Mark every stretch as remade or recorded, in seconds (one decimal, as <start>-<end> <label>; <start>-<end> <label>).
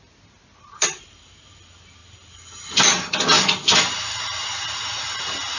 0.0-5.6 recorded